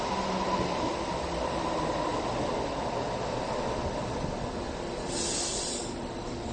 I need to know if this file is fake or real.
real